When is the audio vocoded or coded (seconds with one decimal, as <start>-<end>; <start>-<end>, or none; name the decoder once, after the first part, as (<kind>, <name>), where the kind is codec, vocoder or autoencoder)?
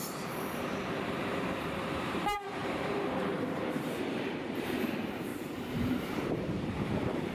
0.0-7.3 (vocoder, BigVGAN v2)